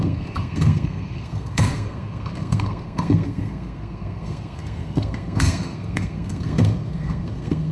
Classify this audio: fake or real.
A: fake